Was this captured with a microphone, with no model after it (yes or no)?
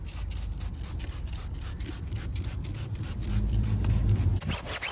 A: no